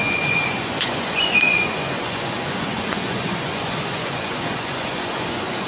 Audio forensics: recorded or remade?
remade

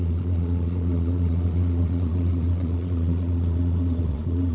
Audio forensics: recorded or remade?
remade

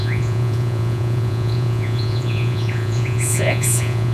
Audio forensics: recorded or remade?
remade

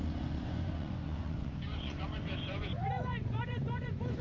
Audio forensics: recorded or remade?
remade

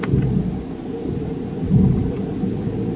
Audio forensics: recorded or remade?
recorded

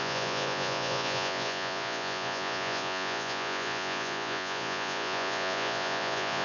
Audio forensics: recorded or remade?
remade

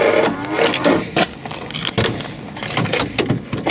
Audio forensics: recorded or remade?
recorded